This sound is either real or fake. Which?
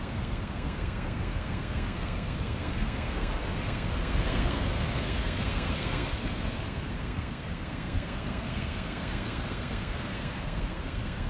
fake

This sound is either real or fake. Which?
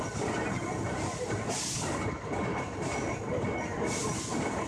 real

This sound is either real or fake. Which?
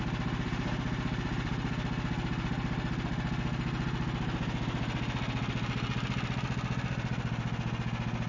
real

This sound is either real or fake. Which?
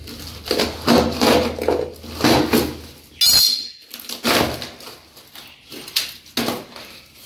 real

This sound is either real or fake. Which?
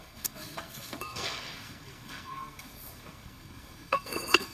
fake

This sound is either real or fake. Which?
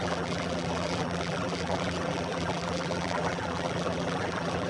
fake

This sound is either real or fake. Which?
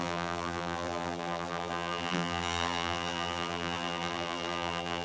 fake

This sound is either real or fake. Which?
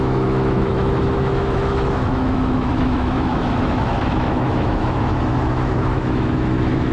fake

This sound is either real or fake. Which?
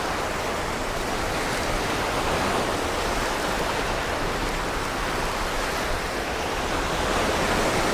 real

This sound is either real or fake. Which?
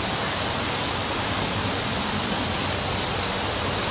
real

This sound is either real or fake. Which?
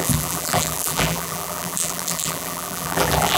fake